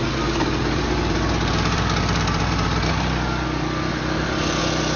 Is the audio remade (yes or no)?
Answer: no